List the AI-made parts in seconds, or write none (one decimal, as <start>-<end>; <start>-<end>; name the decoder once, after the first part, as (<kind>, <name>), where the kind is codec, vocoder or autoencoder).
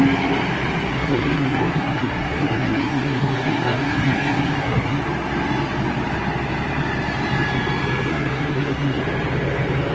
0.9-5.0 (codec, SNAC); 8.1-9.0